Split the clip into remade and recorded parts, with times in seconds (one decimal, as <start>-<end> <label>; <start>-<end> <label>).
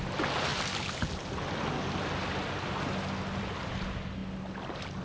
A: 0.0-5.0 recorded